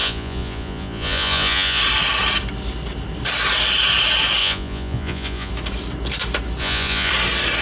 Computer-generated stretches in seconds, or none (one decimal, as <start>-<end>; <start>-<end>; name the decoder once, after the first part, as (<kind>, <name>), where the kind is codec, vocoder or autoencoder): 0.0-1.8 (vocoder, Vocos); 4.4-5.5; 6.6-7.1